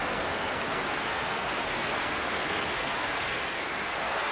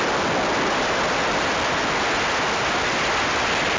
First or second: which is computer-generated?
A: first